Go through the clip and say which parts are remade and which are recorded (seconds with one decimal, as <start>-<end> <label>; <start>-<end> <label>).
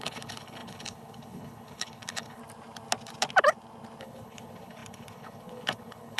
0.0-2.4 remade; 2.4-4.0 recorded; 4.0-6.2 remade